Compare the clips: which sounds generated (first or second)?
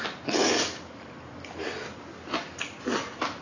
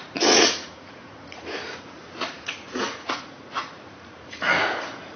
second